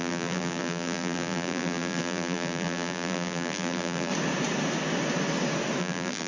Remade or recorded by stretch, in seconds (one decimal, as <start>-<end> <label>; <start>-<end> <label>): 0.0-4.1 remade; 4.1-5.8 recorded; 5.8-6.3 remade